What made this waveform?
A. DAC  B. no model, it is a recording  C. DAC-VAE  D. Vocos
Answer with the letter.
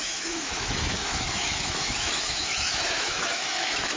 C